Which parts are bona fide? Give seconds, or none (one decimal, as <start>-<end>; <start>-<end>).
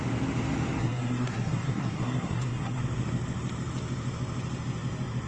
0.0-0.8; 2.8-5.3